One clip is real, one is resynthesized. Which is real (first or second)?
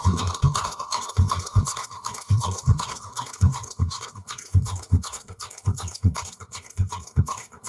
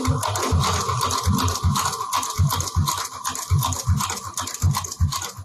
second